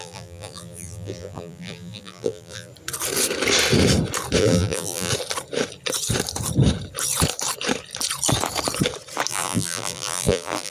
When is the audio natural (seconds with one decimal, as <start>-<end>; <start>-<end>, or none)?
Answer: 2.7-4.4; 5.1-9.3